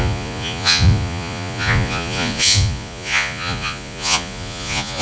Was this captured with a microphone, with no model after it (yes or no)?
no